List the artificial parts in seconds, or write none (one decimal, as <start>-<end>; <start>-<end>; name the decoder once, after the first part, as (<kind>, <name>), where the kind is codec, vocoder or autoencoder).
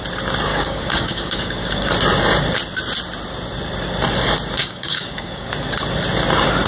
0.5-1.9 (codec, DAC); 4.6-5.5